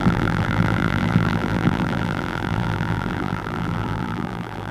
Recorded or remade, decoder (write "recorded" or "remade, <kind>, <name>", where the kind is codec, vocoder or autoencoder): remade, vocoder, BigVGAN v2